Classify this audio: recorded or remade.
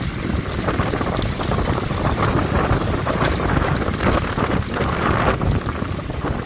recorded